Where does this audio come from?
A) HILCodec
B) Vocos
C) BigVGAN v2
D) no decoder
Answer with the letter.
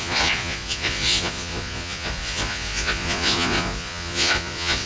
B